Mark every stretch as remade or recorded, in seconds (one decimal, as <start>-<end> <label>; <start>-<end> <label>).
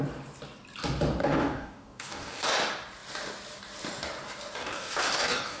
0.0-1.2 recorded; 1.2-2.5 remade; 2.5-4.6 recorded; 4.6-5.6 remade